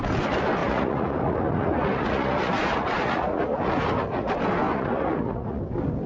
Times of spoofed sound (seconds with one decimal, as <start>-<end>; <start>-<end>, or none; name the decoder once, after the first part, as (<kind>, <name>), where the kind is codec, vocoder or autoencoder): 0.6-4.3 (vocoder, Vocos); 4.7-5.6